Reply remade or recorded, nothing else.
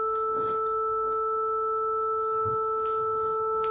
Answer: recorded